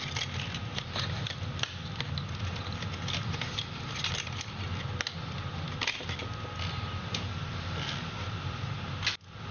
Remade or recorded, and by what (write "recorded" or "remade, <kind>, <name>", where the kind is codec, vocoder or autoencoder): recorded